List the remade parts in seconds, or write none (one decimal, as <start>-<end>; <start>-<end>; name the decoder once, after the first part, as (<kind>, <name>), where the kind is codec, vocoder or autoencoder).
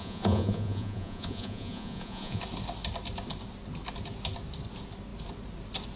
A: 0.0-2.4 (vocoder, Vocos)